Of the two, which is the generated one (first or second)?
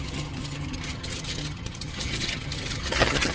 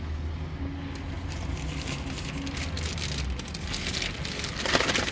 first